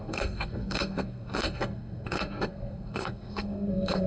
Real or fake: fake